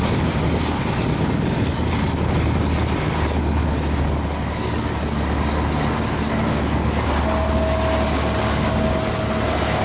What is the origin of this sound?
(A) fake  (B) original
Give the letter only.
B